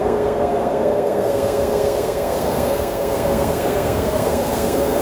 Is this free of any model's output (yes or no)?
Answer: no